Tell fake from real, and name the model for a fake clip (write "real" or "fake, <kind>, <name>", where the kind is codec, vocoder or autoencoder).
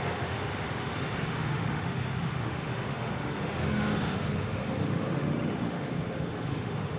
fake, autoencoder, DAC-VAE